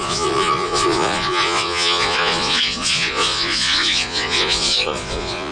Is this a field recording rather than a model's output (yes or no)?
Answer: no